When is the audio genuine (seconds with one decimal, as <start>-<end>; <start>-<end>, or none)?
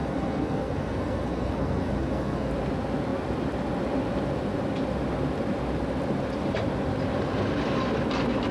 2.5-8.5